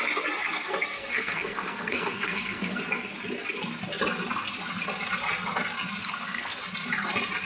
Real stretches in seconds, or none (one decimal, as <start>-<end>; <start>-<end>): 0.0-0.4; 2.8-6.0; 6.6-7.4